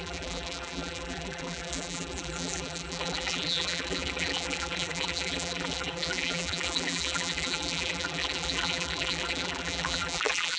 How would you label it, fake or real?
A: fake